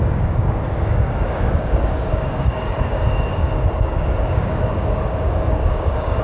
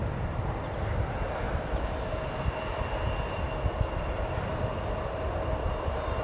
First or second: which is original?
second